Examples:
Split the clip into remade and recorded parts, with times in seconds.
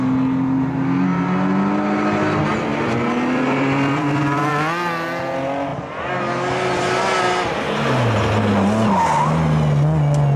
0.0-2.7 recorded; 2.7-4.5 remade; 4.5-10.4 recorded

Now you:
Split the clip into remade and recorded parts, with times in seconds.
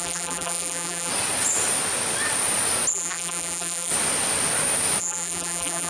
0.0-1.1 remade; 1.1-2.9 recorded; 2.9-3.9 remade; 3.9-5.0 recorded; 5.0-5.9 remade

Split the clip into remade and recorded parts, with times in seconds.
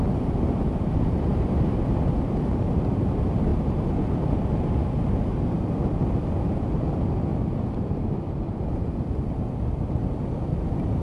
0.0-1.3 recorded; 1.3-2.6 remade; 2.6-7.3 recorded; 7.3-8.7 remade; 8.7-11.0 recorded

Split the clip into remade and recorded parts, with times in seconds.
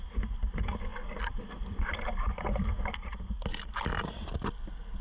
0.0-0.9 recorded; 0.9-3.9 remade; 3.9-5.0 recorded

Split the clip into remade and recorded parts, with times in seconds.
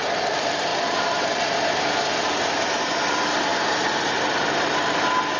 0.0-0.7 recorded; 0.7-1.4 remade; 1.4-5.4 recorded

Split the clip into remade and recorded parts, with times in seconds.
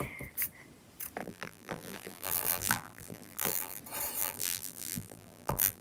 0.0-1.2 recorded; 1.2-3.8 remade; 3.8-4.2 recorded; 4.2-5.8 remade